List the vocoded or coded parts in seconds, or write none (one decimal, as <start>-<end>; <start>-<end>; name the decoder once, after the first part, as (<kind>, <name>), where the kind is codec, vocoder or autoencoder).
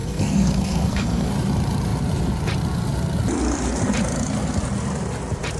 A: 0.0-1.3 (codec, SNAC)